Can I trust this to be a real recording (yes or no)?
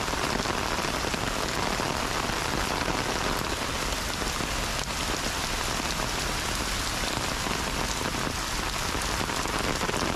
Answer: yes